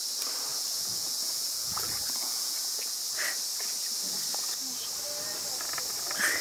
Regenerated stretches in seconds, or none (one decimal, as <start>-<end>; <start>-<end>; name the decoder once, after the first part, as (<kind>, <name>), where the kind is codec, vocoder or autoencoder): 0.5-3.0 (vocoder, Vocos)